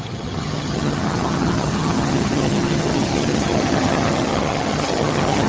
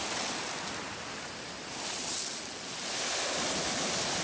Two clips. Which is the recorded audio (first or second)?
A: second